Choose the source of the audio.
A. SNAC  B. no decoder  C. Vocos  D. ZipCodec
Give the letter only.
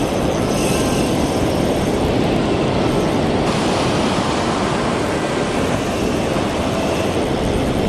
B